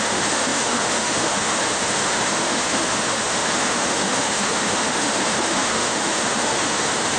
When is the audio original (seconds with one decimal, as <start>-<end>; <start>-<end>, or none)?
none